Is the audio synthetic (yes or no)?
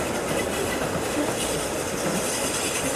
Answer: no